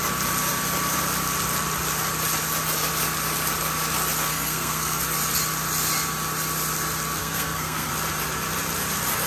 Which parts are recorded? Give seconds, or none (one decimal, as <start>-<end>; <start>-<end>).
0.0-4.3; 5.0-7.2; 7.9-9.3